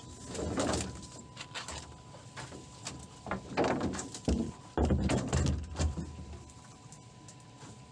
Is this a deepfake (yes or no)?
no